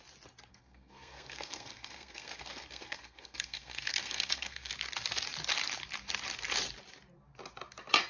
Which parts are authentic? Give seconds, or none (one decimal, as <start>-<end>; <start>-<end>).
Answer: 0.0-0.5; 4.7-8.1